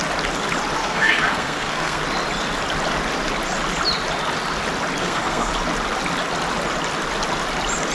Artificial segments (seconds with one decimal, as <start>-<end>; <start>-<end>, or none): 0.8-2.0; 5.0-5.5